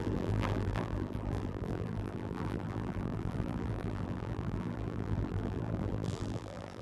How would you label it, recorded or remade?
remade